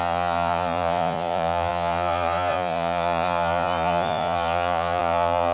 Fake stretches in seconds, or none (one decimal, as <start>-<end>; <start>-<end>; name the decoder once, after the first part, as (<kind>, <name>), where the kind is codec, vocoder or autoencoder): 0.0-5.5 (vocoder, Vocos)